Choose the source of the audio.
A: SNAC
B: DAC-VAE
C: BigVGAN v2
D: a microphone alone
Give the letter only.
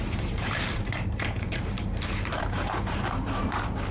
C